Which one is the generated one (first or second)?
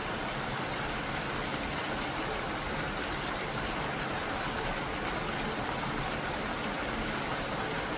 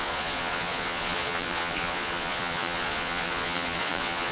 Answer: second